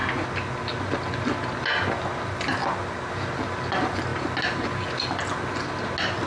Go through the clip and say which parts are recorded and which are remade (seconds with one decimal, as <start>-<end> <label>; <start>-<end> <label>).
0.0-6.3 recorded